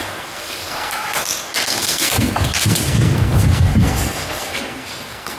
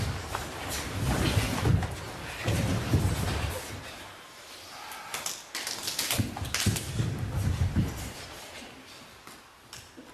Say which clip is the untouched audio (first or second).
second